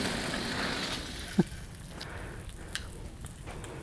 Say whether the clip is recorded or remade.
recorded